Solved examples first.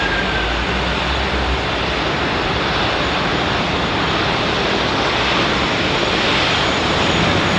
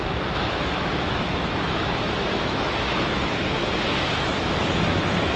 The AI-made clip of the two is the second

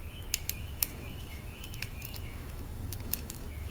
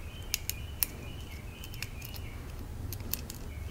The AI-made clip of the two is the first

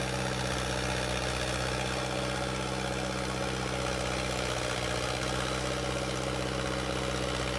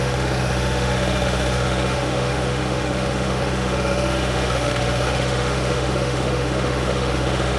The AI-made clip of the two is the second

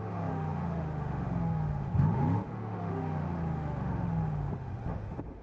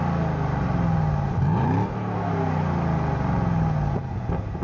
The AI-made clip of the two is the first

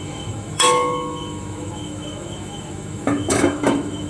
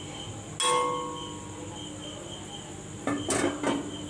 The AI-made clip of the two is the first